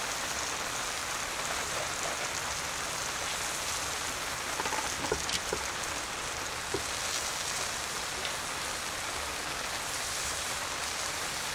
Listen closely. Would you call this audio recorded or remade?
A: recorded